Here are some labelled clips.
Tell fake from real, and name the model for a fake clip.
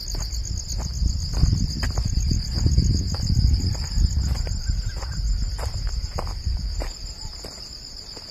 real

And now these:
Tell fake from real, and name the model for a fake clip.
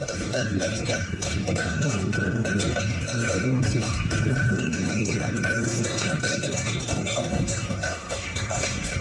fake, codec, SNAC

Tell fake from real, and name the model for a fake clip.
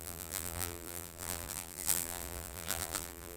fake, vocoder, BigVGAN v2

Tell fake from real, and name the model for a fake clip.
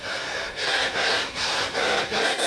fake, codec, SNAC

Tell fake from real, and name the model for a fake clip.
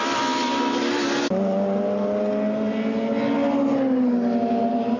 real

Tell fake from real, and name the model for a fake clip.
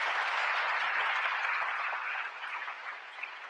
fake, vocoder, Vocos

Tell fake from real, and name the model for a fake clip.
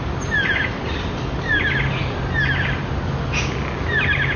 real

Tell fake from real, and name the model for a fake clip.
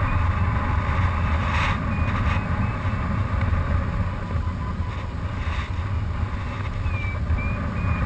real